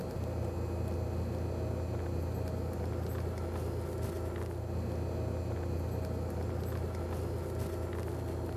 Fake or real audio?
real